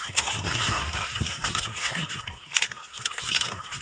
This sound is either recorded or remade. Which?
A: remade